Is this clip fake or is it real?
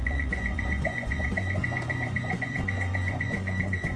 fake